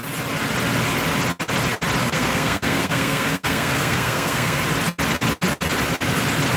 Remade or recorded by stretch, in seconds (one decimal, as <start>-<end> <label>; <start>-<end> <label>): 0.0-2.0 recorded; 2.0-4.6 remade; 4.6-6.6 recorded